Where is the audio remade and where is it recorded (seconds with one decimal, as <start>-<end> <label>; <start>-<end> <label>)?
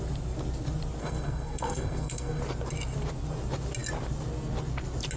0.0-1.0 recorded; 1.0-2.4 remade; 2.4-5.2 recorded